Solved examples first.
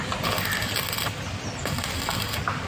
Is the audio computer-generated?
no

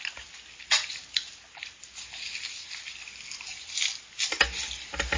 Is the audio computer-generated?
no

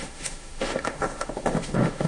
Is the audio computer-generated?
yes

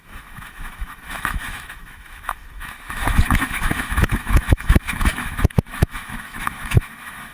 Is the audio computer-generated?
yes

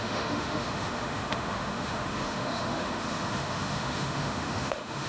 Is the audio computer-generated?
yes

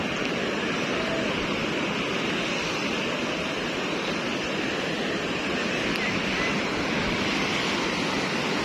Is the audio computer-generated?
no